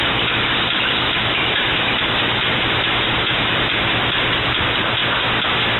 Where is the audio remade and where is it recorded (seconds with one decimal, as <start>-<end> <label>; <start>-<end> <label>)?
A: 0.0-5.0 remade; 5.0-5.8 recorded

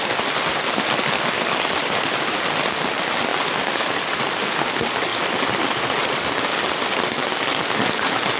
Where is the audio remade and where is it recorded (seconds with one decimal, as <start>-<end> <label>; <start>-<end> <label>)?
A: 0.0-3.3 recorded; 3.3-4.2 remade; 4.2-5.1 recorded; 5.1-6.6 remade; 6.6-8.4 recorded

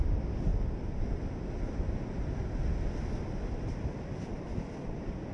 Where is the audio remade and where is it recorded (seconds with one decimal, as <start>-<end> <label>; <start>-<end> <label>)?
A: 0.0-0.5 remade; 0.5-1.0 recorded; 1.0-5.3 remade

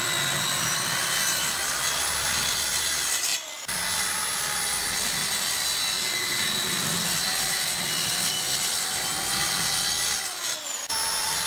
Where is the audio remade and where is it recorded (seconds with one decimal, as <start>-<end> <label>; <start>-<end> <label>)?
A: 0.0-11.5 recorded

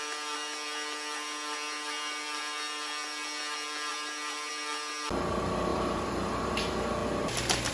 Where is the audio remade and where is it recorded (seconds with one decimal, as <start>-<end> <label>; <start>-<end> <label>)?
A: 0.0-5.7 recorded; 5.7-6.4 remade; 6.4-7.7 recorded

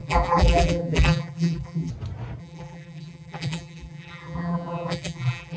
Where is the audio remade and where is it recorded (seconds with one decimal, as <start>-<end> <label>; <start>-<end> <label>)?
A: 0.0-1.9 remade; 1.9-2.4 recorded; 2.4-5.6 remade

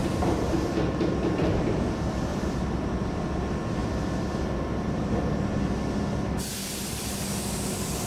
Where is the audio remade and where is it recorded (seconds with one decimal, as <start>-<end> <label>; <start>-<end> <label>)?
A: 0.0-2.3 recorded; 2.3-2.9 remade; 2.9-3.8 recorded; 3.8-5.2 remade; 5.2-8.1 recorded

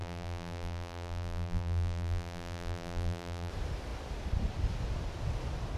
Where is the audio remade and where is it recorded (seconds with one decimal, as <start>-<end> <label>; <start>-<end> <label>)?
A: 0.0-3.5 remade; 3.5-5.8 recorded